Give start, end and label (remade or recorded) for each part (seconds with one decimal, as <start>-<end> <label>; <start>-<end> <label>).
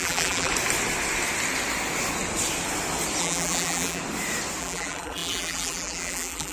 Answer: 0.0-0.5 remade; 0.5-3.2 recorded; 3.2-4.0 remade; 4.0-4.6 recorded; 4.6-6.5 remade